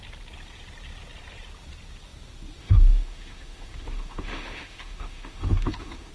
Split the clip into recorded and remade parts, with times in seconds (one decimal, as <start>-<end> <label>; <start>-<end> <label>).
0.0-2.6 recorded; 2.6-6.1 remade